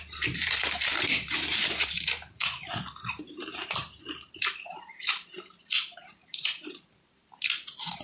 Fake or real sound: fake